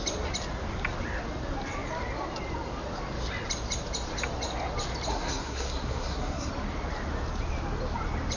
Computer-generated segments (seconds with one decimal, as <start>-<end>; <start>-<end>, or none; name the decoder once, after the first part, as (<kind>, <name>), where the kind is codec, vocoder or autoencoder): 5.1-6.5 (codec, SNAC)